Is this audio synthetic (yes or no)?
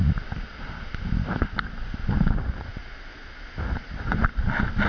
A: no